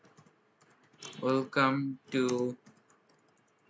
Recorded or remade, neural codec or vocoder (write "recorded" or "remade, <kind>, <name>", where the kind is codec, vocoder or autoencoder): recorded